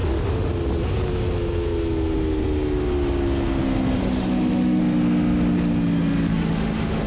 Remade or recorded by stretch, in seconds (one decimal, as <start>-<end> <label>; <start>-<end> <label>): 0.0-0.5 remade; 0.5-4.0 recorded; 4.0-4.8 remade; 4.8-6.3 recorded; 6.3-7.1 remade